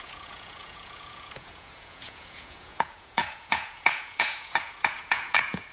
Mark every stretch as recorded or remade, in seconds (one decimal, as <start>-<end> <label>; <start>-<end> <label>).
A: 0.0-5.7 remade